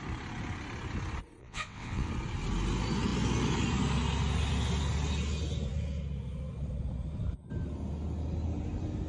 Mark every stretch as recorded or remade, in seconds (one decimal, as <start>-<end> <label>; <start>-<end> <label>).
0.0-1.4 recorded; 1.4-2.1 remade; 2.1-9.1 recorded